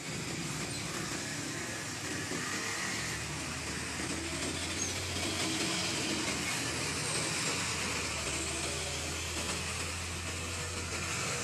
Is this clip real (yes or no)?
yes